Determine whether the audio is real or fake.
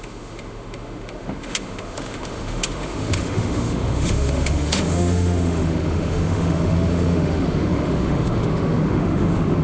fake